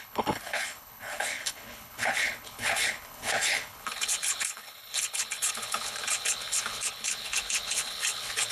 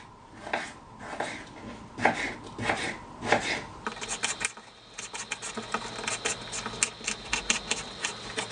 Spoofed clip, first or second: first